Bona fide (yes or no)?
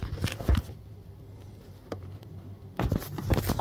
yes